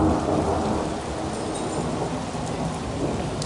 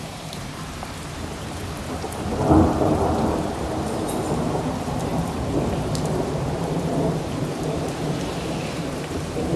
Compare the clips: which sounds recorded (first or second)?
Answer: first